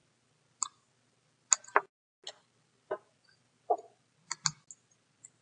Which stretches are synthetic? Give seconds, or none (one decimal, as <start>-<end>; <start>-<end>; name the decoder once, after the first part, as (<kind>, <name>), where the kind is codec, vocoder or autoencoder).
none